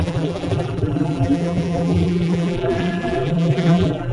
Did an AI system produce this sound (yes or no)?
yes